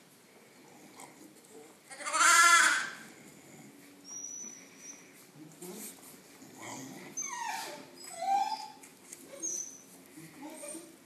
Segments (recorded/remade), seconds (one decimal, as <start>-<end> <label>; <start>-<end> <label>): 0.0-11.1 recorded